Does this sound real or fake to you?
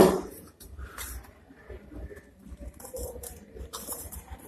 fake